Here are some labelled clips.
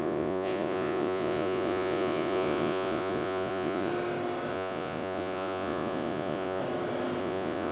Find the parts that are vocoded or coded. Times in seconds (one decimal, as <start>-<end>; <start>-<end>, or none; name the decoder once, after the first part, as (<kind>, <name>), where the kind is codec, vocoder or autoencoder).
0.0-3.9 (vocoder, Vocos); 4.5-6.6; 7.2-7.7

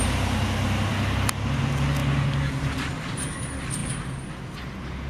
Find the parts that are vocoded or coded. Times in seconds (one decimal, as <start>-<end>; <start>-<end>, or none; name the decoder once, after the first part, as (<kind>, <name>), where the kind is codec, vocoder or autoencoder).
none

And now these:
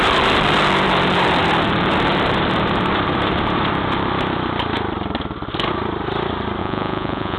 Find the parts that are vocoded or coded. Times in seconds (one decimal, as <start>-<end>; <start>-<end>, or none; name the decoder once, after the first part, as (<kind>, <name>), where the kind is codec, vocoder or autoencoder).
6.6-7.4 (vocoder, Vocos)

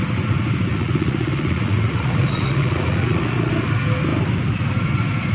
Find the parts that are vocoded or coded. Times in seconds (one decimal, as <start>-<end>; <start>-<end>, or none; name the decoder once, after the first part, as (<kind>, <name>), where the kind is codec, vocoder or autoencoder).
0.7-3.5 (vocoder, Vocos)

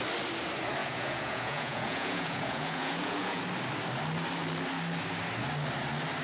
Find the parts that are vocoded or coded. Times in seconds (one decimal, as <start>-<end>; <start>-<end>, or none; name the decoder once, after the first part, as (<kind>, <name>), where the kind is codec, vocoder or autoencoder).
0.8-3.4 (vocoder, Vocos)

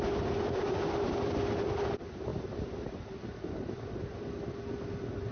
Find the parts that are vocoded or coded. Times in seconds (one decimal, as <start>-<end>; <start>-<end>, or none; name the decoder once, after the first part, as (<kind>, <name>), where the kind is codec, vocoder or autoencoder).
2.3-3.2 (vocoder, BigVGAN v2)